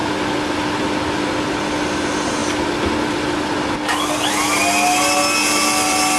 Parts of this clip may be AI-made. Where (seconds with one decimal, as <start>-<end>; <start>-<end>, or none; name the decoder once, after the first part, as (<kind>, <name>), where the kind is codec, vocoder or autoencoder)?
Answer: none